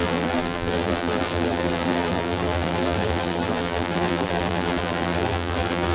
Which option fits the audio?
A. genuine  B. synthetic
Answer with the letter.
B